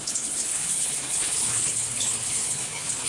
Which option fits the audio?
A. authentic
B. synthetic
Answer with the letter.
B